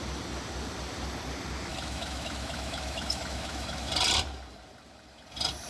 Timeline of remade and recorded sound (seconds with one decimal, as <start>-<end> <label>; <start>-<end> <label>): 0.0-1.7 recorded; 1.7-3.9 remade; 3.9-5.7 recorded